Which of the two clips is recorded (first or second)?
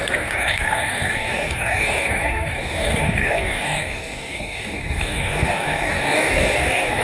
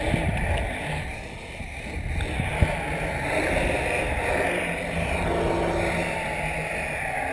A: second